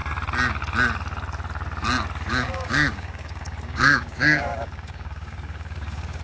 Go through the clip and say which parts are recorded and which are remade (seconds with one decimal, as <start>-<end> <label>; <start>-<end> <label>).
0.0-2.3 recorded; 2.3-6.2 remade